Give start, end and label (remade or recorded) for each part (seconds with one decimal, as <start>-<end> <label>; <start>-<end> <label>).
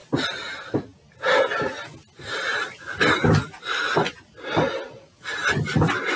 0.0-6.2 recorded